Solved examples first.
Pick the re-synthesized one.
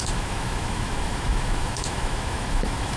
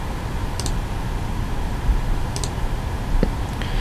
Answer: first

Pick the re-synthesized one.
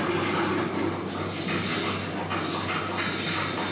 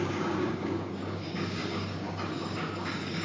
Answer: second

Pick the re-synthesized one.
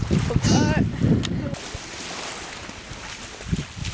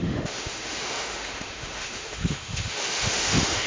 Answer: second